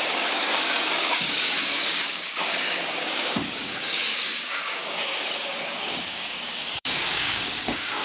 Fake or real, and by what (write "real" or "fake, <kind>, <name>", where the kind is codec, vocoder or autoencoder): fake, codec, DAC